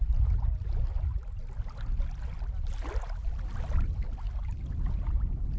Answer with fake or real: real